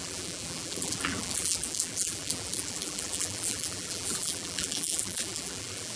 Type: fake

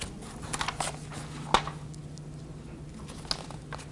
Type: real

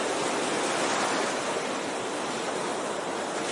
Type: real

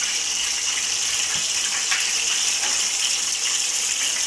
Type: real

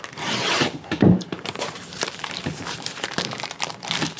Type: fake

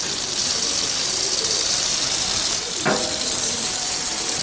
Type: fake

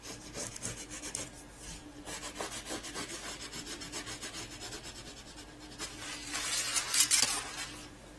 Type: real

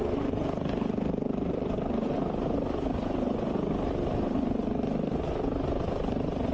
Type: fake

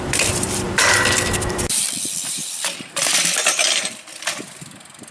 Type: fake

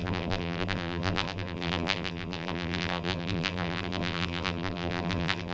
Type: fake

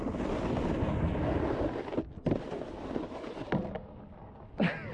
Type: real